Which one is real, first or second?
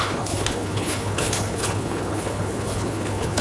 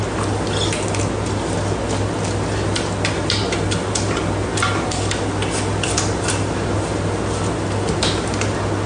second